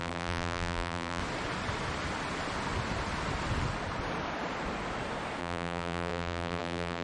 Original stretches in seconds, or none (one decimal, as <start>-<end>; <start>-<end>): 1.2-5.4